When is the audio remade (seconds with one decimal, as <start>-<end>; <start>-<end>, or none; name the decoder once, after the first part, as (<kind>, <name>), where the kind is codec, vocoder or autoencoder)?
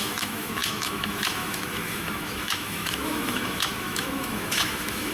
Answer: 0.0-5.1 (autoencoder, DAC-VAE)